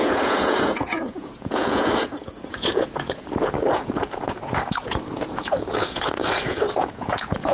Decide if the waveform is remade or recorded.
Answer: remade